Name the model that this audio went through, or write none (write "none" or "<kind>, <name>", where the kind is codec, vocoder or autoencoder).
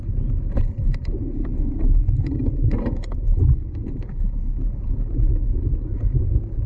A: none